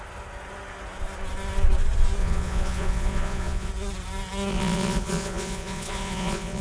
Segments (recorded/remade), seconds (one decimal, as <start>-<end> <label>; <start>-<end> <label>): 0.0-2.2 recorded; 2.2-3.7 remade; 3.7-4.5 recorded; 4.5-6.6 remade